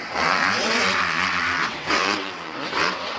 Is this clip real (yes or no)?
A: no